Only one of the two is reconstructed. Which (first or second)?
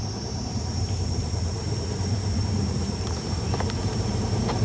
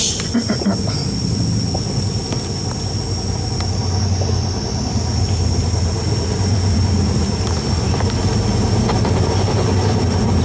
first